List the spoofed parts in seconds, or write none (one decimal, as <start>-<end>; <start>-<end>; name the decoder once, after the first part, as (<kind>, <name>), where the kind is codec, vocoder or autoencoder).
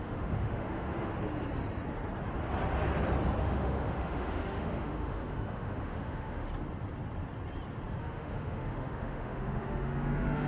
0.0-1.1 (autoencoder, DAC-VAE); 3.4-6.5; 8.0-10.5